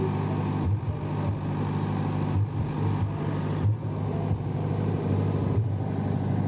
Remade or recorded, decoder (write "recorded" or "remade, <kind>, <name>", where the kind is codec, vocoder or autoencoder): recorded